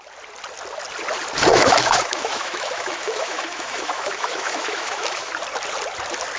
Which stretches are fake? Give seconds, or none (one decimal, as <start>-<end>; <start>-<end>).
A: 1.5-5.3